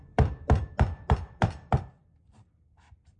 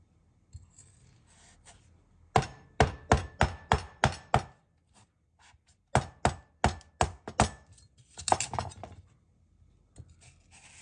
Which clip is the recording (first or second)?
second